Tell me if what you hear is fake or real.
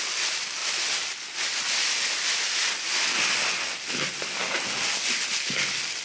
real